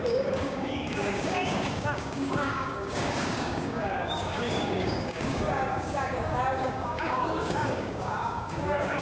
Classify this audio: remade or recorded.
remade